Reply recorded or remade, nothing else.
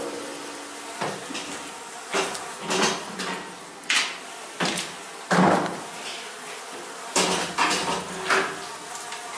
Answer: recorded